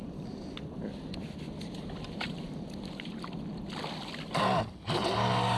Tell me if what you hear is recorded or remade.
recorded